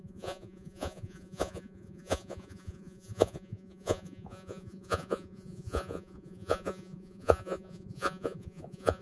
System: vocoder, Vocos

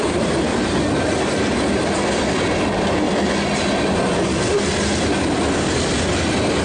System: none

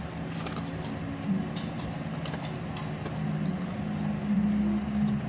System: none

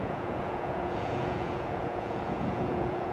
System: vocoder, Vocos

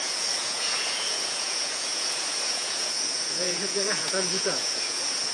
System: vocoder, Vocos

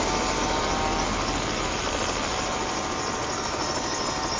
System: none